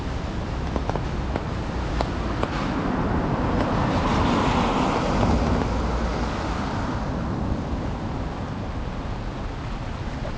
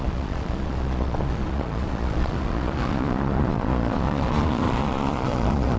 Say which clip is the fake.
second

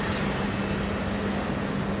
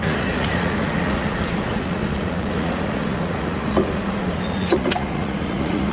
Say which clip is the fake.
second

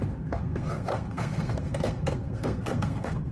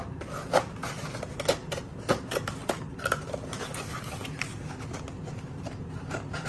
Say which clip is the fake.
first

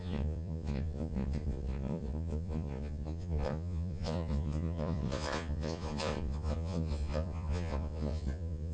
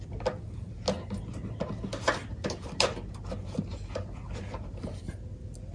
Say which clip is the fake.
first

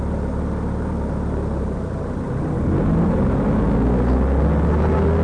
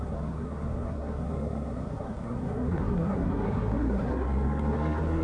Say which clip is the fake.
second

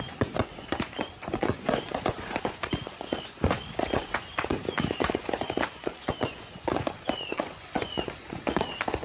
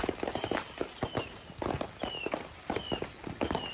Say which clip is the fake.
first